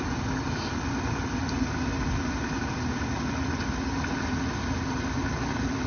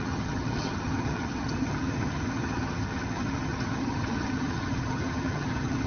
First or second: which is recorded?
first